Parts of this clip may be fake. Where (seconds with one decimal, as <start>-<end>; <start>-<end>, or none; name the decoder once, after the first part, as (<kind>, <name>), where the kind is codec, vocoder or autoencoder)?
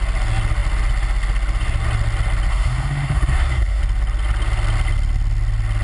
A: 2.5-3.8 (codec, SNAC)